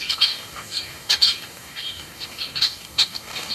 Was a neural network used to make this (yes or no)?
yes